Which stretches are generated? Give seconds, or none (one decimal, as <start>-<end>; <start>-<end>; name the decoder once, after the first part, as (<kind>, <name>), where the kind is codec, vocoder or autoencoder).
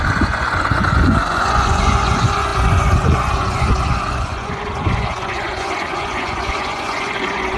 0.0-7.6 (vocoder, Vocos)